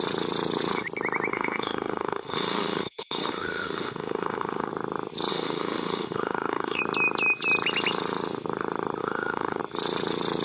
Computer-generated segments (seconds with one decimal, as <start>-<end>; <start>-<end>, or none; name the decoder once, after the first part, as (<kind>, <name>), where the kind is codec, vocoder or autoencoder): 1.3-4.7 (autoencoder, DAC-VAE); 5.3-6.8; 9.0-9.6